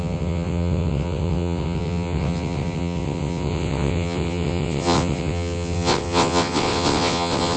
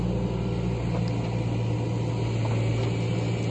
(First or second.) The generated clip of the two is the first